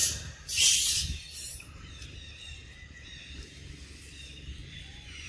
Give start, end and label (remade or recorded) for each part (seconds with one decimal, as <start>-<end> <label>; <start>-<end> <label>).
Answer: 0.0-4.6 recorded; 4.6-5.3 remade